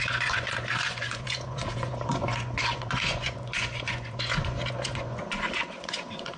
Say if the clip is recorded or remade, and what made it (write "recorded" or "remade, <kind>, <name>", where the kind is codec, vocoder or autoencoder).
remade, vocoder, Vocos